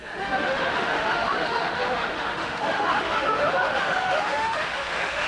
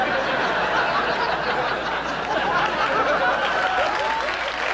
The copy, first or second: first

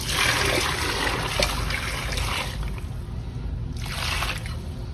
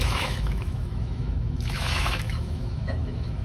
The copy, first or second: second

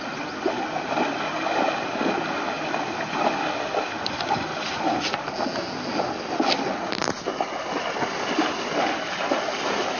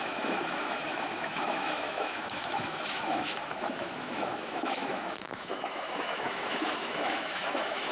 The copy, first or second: second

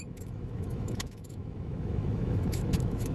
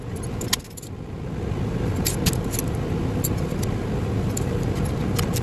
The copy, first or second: first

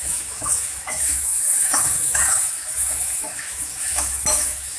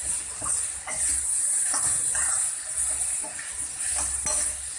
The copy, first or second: first